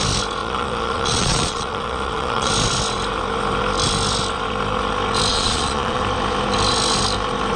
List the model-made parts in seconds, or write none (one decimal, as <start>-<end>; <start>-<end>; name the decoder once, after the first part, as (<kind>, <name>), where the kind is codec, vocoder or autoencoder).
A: 0.4-2.5 (vocoder, Vocos); 5.3-6.0